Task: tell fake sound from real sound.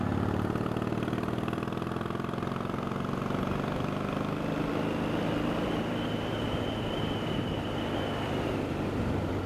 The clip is real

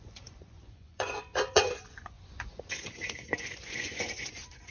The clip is fake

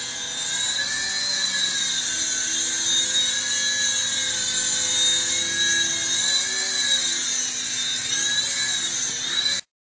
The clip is real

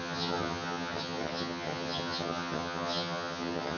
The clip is fake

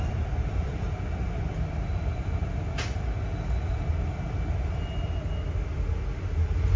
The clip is real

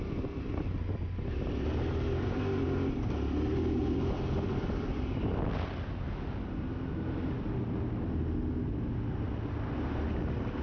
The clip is real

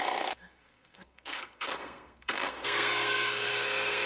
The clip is fake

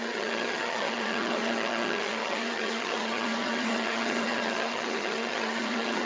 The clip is fake